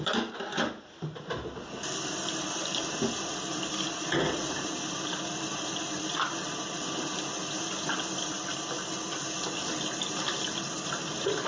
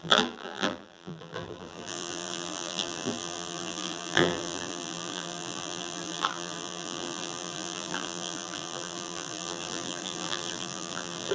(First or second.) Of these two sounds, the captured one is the first